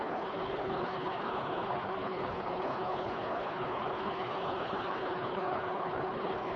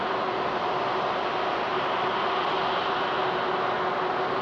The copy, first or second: first